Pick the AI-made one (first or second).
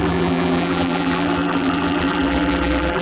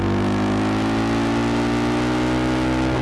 first